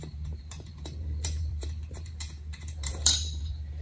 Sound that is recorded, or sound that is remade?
remade